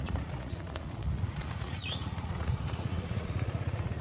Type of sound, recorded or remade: remade